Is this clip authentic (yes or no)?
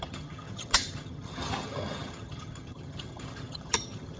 no